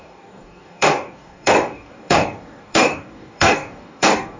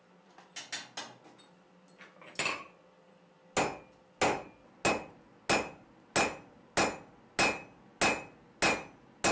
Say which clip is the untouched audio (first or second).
second